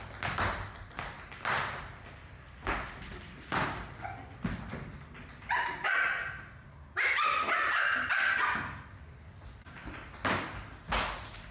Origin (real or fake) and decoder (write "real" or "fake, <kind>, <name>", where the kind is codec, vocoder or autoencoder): real